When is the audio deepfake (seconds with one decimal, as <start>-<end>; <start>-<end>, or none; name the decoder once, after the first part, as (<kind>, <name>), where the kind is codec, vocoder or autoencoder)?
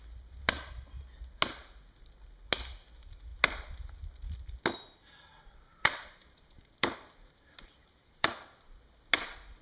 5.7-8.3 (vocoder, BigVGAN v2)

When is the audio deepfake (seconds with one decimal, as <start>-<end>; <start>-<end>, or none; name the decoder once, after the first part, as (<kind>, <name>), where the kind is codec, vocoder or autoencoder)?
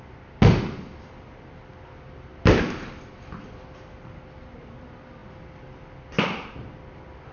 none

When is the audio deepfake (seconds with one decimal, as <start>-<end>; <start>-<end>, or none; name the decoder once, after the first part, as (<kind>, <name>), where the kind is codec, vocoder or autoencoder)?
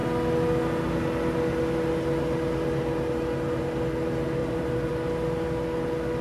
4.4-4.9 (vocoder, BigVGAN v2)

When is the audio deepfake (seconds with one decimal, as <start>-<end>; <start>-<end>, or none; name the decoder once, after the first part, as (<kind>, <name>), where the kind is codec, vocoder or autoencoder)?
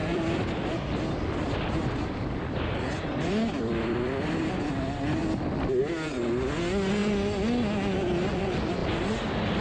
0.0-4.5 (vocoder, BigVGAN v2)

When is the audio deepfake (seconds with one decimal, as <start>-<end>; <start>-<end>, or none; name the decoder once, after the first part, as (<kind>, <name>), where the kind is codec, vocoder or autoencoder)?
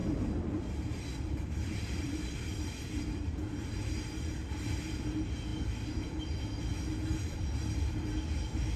0.0-0.6 (vocoder, BigVGAN v2); 1.1-3.3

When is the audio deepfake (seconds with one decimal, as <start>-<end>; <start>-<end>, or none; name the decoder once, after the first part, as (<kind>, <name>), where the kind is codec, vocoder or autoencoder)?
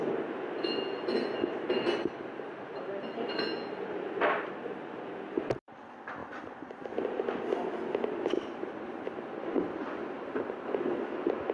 6.2-7.1 (vocoder, BigVGAN v2)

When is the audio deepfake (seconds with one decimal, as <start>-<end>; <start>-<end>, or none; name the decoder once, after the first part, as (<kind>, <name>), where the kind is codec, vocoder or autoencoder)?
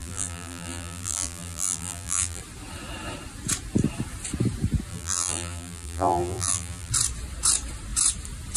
0.0-2.4 (vocoder, BigVGAN v2); 4.9-6.9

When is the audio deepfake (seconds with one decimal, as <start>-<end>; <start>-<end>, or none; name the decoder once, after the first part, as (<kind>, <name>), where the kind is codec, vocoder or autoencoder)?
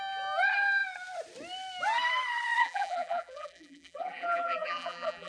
2.6-5.3 (vocoder, BigVGAN v2)